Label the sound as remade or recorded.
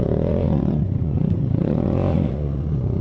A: remade